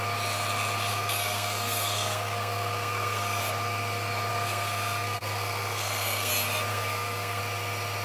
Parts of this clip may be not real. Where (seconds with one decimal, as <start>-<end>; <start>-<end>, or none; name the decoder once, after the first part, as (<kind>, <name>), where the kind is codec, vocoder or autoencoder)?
0.9-3.4 (codec, SNAC); 4.3-6.3; 6.7-7.4